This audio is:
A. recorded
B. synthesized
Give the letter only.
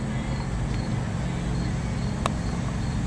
A